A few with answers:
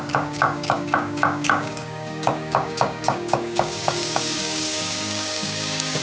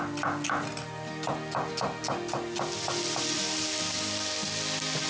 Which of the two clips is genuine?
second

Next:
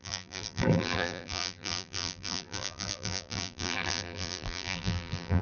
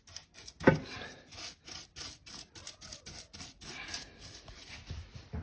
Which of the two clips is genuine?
second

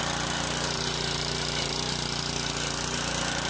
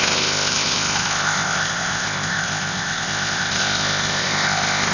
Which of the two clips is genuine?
first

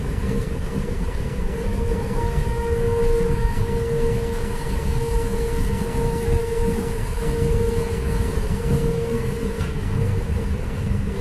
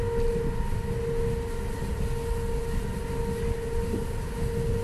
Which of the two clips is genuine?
second